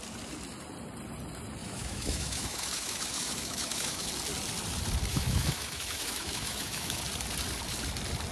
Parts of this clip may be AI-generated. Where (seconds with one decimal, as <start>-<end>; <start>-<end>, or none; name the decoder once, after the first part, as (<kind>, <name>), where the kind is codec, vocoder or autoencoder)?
1.6-4.1 (autoencoder, DAC-VAE); 5.1-7.0